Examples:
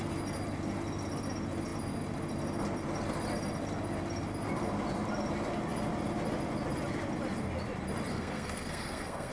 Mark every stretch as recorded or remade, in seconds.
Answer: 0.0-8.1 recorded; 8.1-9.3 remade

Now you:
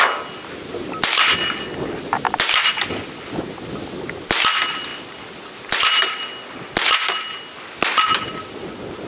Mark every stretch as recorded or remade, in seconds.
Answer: 0.0-4.9 recorded; 4.9-5.8 remade; 5.8-9.1 recorded

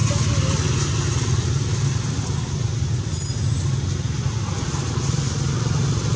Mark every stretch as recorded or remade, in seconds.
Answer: 0.0-6.2 recorded

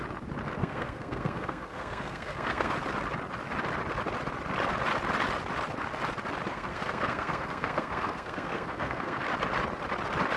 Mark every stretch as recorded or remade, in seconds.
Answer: 0.0-0.6 recorded; 0.6-2.7 remade; 2.7-6.5 recorded; 6.5-9.2 remade; 9.2-10.4 recorded

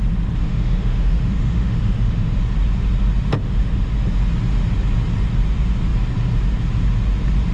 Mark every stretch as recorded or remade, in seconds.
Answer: 0.0-0.4 recorded; 0.4-2.4 remade; 2.4-3.4 recorded; 3.4-3.9 remade; 3.9-7.5 recorded